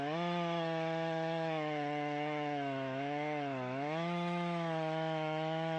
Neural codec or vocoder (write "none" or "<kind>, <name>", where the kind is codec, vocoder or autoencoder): autoencoder, DAC-VAE